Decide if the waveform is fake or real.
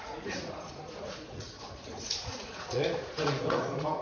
fake